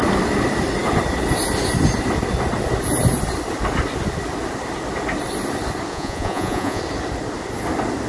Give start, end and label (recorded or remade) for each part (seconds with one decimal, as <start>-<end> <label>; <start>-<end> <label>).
0.0-5.9 recorded; 5.9-6.8 remade; 6.8-8.1 recorded